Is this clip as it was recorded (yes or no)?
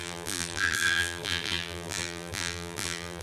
no